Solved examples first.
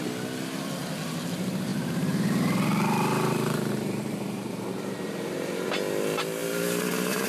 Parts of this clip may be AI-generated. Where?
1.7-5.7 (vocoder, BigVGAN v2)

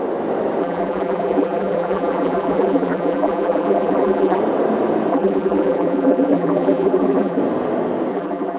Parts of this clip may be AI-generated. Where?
0.6-4.4 (vocoder, BigVGAN v2); 5.1-7.4; 8.1-8.6

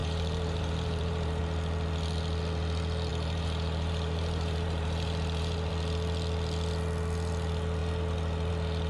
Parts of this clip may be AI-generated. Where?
0.0-1.4 (vocoder, BigVGAN v2); 3.1-5.7

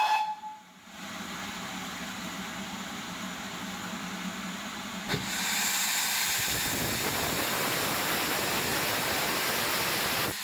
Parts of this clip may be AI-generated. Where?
1.4-2.5 (vocoder, BigVGAN v2)